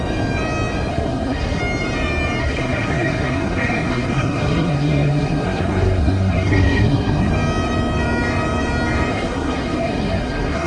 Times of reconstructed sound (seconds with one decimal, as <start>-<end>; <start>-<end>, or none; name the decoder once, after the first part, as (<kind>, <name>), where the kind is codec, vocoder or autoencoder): 0.9-1.6 (codec, SNAC); 2.4-7.3; 9.1-10.7